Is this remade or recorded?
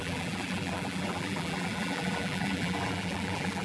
remade